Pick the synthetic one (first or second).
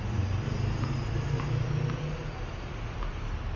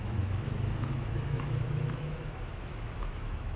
second